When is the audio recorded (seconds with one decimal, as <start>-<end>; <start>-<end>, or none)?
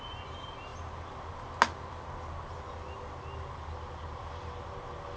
0.0-5.2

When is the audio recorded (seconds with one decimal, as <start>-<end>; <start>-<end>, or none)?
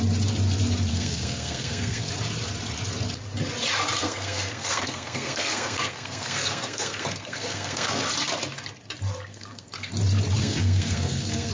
0.0-0.9; 2.1-4.0; 8.0-9.3; 9.9-10.4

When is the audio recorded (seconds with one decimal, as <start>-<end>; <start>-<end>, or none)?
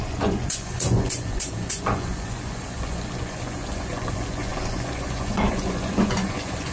none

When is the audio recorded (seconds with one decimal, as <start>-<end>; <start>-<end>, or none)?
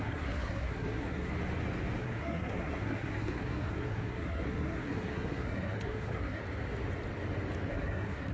1.3-2.0; 6.4-7.7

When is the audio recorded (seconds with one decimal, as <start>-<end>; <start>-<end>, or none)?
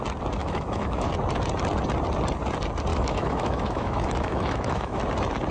0.0-0.4; 1.1-2.9; 5.0-5.5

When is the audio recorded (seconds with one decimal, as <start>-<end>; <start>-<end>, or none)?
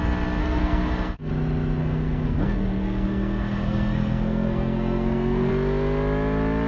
0.0-0.4; 1.3-1.8; 5.5-6.7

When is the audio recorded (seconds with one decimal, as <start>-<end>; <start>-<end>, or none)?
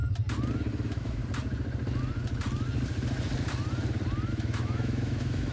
0.0-0.7; 1.2-4.3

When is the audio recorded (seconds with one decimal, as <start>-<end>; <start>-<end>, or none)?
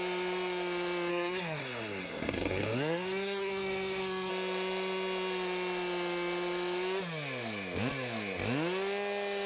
0.0-1.1; 4.3-9.5